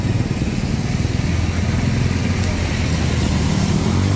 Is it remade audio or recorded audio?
recorded